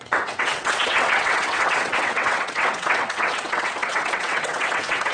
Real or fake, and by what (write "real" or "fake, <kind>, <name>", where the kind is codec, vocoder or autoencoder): fake, vocoder, WaveNeXt